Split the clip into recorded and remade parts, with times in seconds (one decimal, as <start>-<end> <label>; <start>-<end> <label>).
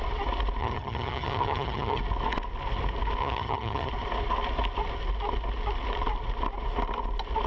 0.0-0.6 recorded; 0.6-2.0 remade; 2.0-3.2 recorded; 3.2-3.9 remade; 3.9-7.5 recorded